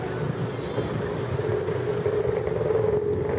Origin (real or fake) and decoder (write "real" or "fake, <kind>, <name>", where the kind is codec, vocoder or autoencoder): real